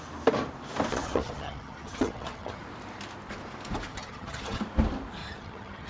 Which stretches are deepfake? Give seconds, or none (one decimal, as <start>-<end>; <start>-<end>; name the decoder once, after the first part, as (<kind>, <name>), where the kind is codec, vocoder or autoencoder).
0.9-2.6 (vocoder, HiFi-GAN); 3.9-4.6; 5.2-5.9